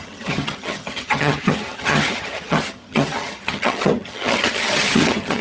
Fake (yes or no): yes